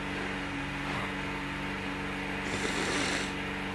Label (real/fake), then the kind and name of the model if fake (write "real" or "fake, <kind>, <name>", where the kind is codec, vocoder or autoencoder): real